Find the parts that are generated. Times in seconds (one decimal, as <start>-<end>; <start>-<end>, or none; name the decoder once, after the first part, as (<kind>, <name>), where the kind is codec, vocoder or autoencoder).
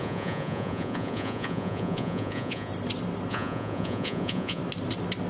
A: 0.0-2.7 (vocoder, Vocos); 3.3-4.6